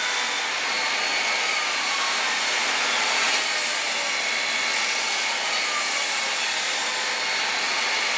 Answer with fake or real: real